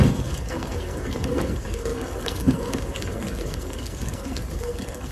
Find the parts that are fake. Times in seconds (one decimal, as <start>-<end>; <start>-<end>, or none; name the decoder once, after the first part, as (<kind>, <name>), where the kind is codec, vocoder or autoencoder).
0.0-5.1 (codec, SNAC)